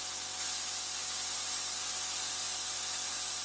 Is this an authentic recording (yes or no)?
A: yes